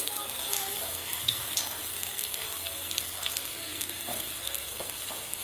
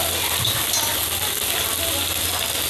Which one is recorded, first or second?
second